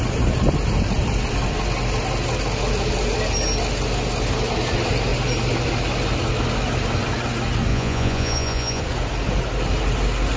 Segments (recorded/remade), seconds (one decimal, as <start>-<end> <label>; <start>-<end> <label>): 0.0-7.7 recorded; 7.7-8.8 remade; 8.8-10.4 recorded